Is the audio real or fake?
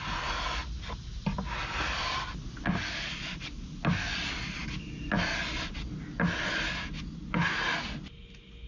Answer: real